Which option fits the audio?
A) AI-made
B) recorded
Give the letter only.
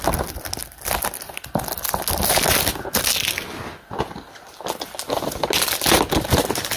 B